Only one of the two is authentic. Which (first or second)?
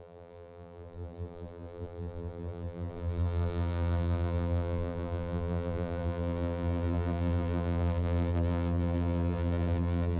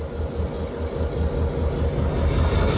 second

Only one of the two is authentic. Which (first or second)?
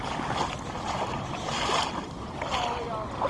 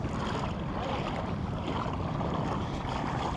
first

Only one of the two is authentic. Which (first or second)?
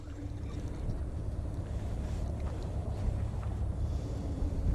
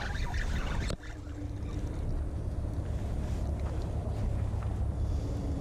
second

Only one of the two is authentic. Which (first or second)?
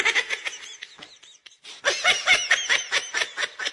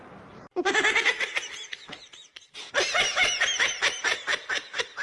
first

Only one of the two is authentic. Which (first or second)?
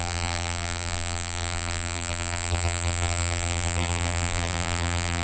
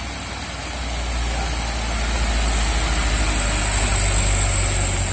second